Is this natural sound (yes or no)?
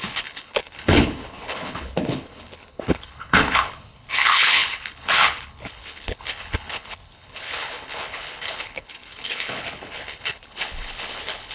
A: no